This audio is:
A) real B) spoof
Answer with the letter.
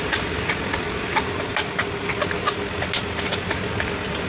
A